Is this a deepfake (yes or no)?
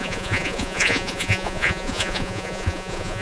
yes